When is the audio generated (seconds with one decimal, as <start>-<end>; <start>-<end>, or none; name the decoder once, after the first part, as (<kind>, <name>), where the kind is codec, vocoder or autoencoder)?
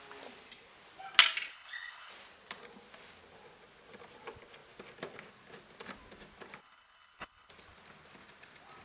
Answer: 1.5-2.1 (codec, HILCodec); 6.6-7.5